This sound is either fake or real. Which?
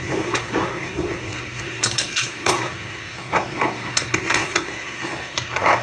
fake